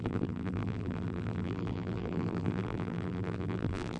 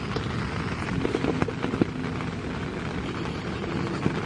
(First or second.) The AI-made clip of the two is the first